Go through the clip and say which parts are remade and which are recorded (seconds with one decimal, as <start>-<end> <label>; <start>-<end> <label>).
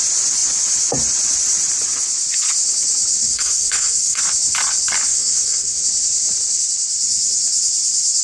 0.0-3.1 recorded; 3.1-4.2 remade; 4.2-5.1 recorded; 5.1-5.8 remade; 5.8-8.2 recorded